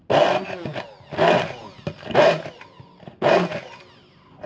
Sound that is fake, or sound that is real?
real